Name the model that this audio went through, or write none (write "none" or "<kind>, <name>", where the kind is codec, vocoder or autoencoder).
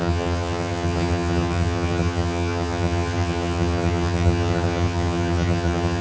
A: vocoder, HiFi-GAN